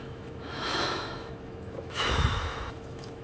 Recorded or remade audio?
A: remade